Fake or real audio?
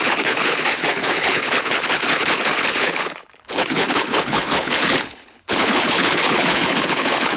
fake